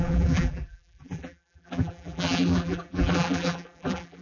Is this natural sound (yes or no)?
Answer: no